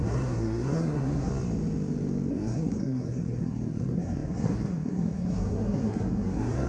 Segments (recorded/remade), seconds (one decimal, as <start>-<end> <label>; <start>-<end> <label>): 0.0-1.3 remade; 1.3-2.3 recorded; 2.3-6.7 remade